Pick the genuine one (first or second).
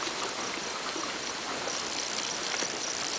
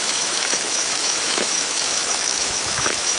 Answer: first